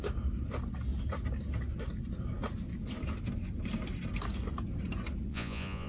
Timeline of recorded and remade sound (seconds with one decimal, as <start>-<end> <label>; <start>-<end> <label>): 0.0-5.3 recorded; 5.3-5.9 remade